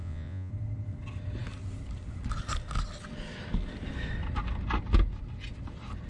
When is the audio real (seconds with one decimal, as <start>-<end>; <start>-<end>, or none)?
0.5-6.1